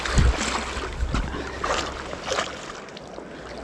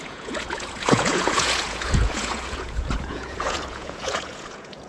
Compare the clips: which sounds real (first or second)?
first